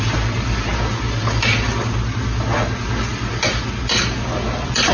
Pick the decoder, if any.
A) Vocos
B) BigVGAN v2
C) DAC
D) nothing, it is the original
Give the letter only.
D